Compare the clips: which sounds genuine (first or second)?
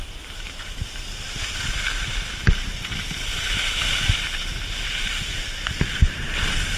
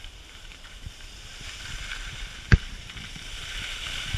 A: first